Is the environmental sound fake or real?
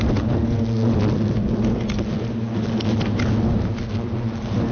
real